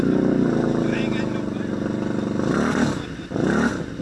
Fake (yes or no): no